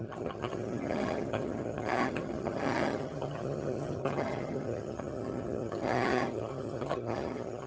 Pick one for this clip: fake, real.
fake